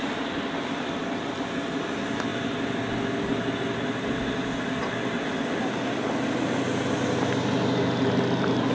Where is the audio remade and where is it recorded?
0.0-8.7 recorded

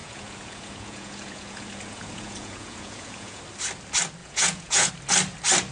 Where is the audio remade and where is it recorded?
0.0-3.4 remade; 3.4-4.2 recorded; 4.2-4.9 remade; 4.9-5.7 recorded

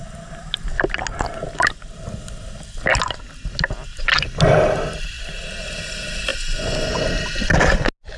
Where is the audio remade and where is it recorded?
0.0-6.3 recorded; 6.3-7.0 remade; 7.0-8.2 recorded